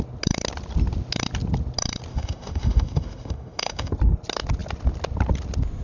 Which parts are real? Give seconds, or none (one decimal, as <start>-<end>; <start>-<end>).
0.0-2.1; 3.9-5.8